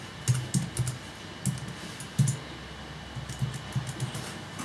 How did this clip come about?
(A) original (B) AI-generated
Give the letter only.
A